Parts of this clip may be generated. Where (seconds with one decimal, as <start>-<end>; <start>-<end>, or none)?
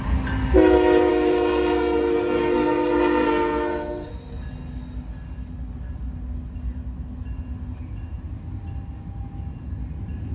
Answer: 1.1-4.1